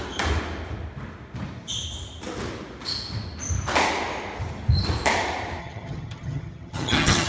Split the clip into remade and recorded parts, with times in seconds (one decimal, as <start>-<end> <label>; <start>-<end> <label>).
0.0-5.6 recorded; 5.6-7.3 remade

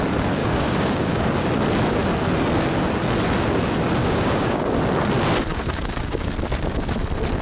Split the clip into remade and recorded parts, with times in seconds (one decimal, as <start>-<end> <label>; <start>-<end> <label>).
0.0-0.4 recorded; 0.4-1.3 remade; 1.3-4.0 recorded; 4.0-4.7 remade; 4.7-5.5 recorded; 5.5-6.3 remade; 6.3-7.4 recorded

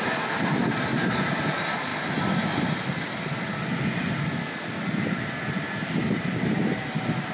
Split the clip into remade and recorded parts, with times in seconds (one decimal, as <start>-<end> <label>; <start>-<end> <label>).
0.0-0.9 recorded; 0.9-1.5 remade; 1.5-6.0 recorded; 6.0-6.8 remade; 6.8-7.3 recorded

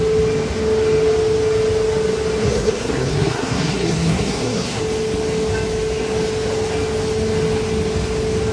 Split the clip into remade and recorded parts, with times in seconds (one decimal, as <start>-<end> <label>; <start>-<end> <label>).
0.0-2.4 recorded; 2.4-4.8 remade; 4.8-8.5 recorded

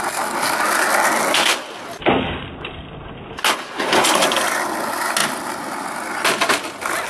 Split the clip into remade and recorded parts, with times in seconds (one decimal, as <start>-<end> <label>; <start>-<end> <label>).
0.0-7.1 recorded

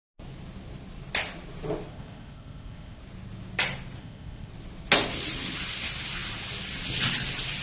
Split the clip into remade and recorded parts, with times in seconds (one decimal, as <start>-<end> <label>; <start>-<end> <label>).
0.0-1.9 recorded; 1.9-3.0 remade; 3.0-4.0 recorded; 4.0-4.5 remade; 4.5-7.6 recorded